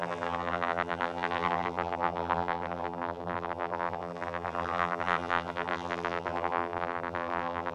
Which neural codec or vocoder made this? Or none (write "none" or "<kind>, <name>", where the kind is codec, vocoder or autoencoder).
vocoder, BigVGAN v2